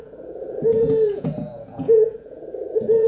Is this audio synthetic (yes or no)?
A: yes